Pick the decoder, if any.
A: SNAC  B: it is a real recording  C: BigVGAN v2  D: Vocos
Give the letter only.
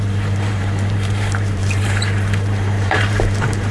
C